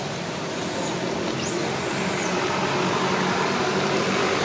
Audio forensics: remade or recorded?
recorded